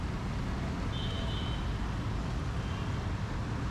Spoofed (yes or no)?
no